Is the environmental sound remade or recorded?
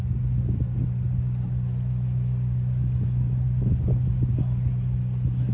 recorded